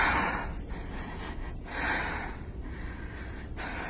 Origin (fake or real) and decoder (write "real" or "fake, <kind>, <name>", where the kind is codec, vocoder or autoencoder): real